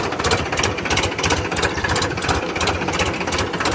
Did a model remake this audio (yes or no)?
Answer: no